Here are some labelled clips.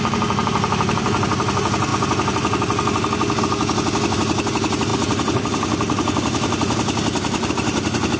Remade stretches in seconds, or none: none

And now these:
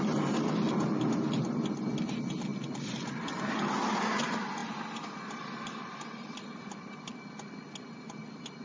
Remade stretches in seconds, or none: 2.5-3.4 (vocoder, BigVGAN v2); 4.6-7.1